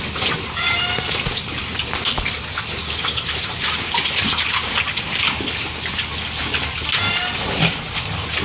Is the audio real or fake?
real